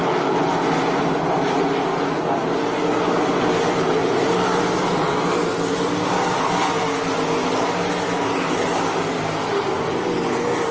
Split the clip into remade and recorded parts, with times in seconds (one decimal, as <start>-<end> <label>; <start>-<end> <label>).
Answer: 0.0-4.0 recorded; 4.0-5.1 remade; 5.1-10.7 recorded